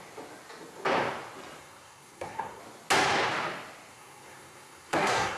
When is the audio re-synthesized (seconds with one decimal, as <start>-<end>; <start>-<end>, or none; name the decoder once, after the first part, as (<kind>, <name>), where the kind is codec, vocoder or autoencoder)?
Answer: 1.6-2.6 (codec, SNAC); 3.9-5.4